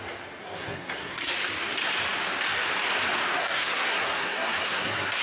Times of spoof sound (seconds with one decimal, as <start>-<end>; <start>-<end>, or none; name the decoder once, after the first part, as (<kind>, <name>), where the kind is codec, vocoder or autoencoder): 0.4-1.3 (codec, SNAC); 3.4-5.2